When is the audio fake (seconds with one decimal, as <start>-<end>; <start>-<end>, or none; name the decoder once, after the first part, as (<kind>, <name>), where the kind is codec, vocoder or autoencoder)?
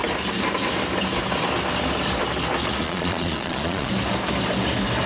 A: 2.8-3.9 (vocoder, Vocos)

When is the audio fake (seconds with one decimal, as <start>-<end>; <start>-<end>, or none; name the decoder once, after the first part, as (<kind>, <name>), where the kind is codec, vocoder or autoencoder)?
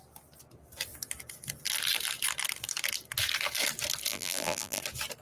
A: 4.1-4.8 (vocoder, BigVGAN v2)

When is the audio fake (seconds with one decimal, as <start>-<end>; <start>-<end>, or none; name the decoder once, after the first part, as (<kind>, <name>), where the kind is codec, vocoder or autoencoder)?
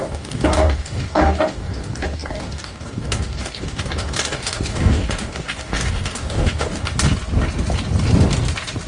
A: 0.0-6.9 (codec, DAC)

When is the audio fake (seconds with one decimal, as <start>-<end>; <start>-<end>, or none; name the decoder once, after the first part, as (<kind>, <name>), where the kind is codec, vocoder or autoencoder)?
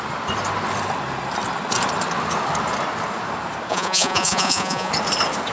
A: 3.7-4.9 (vocoder, Vocos)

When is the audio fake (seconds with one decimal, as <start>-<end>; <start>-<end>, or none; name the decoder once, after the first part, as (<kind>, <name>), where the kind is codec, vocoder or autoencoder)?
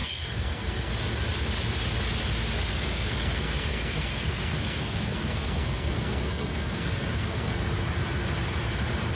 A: 0.0-0.9 (codec, SNAC); 2.7-7.6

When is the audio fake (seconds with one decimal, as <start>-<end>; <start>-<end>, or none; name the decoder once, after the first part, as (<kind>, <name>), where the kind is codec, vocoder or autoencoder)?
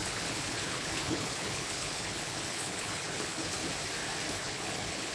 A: 0.0-3.6 (codec, HILCodec); 4.3-5.1